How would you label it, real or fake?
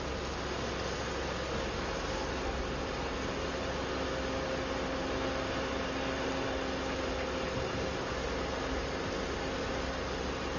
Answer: real